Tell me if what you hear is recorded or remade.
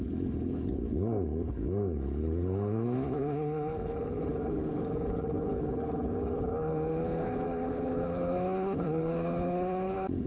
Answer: remade